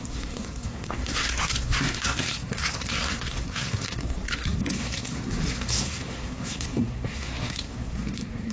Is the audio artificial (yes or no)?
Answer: yes